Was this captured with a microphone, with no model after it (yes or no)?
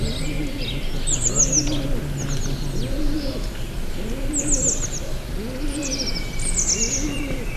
yes